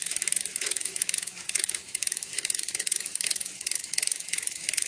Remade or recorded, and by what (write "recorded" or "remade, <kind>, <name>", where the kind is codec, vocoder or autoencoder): remade, autoencoder, DAC-VAE